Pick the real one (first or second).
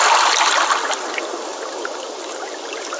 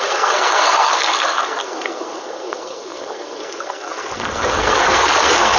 first